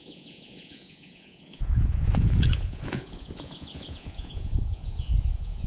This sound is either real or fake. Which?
fake